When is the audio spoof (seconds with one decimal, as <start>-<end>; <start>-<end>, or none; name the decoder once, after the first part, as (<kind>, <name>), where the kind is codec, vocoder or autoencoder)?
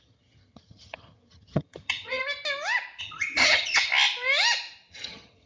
0.0-2.2 (vocoder, HiFi-GAN); 3.0-3.9; 4.9-5.5